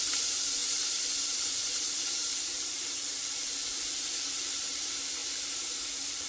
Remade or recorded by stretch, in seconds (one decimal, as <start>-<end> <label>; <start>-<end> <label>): 0.0-6.3 remade